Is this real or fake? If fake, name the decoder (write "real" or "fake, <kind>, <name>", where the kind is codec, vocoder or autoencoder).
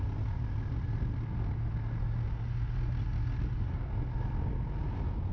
real